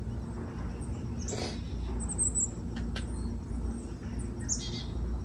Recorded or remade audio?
recorded